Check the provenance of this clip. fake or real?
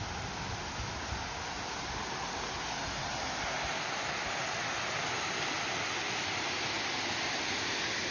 real